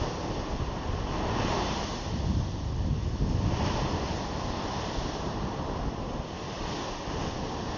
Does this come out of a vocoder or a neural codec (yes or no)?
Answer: no